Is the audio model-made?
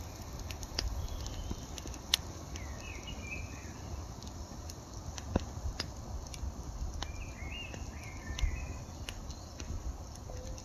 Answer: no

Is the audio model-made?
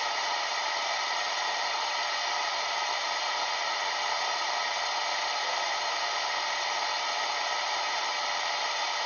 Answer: yes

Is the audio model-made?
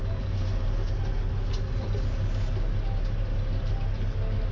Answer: no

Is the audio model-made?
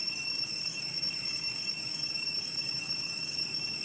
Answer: yes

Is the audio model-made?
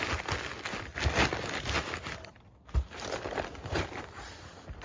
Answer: no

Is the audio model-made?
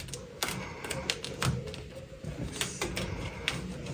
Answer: no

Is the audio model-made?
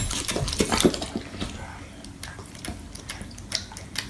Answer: no